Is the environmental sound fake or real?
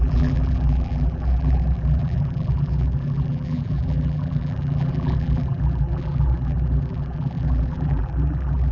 fake